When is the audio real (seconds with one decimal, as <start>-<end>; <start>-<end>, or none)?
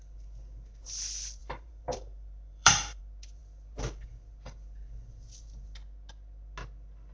0.0-1.4; 3.0-7.1